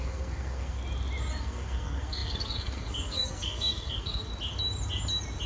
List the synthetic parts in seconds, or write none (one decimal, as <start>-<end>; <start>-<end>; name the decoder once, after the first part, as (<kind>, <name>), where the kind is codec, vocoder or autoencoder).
0.0-0.8 (codec, SNAC); 1.4-4.3